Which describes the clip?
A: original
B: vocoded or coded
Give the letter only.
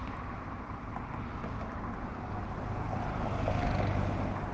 A